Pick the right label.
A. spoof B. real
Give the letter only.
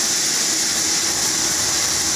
B